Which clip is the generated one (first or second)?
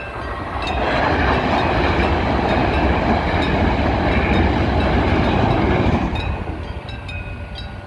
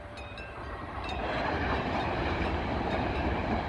second